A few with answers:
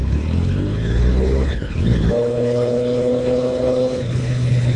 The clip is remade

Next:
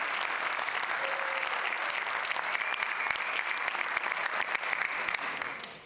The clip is recorded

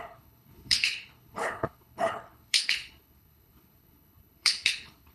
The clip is remade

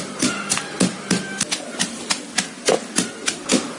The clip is recorded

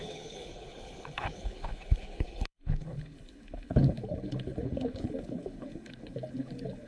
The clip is remade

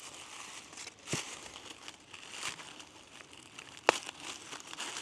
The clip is recorded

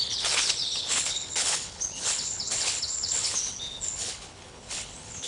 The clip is remade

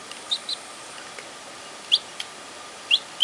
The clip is recorded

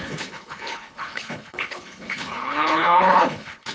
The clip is remade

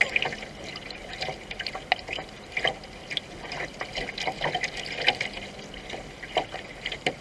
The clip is recorded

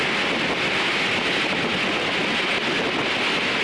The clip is recorded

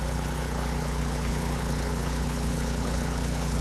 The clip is remade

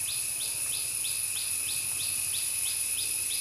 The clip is recorded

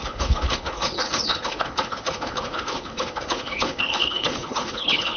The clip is remade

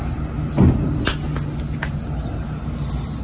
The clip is recorded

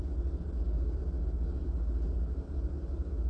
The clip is recorded